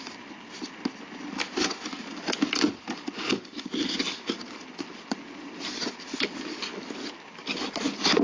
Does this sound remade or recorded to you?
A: recorded